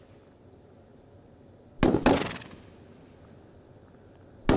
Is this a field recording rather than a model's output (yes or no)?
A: yes